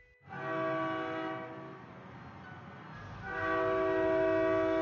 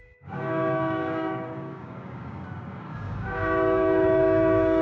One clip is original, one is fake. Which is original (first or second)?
first